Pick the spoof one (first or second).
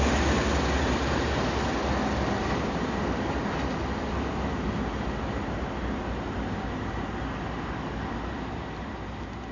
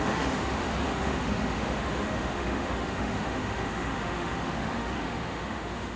second